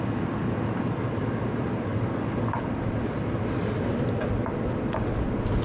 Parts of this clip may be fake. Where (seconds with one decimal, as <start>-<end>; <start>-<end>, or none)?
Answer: none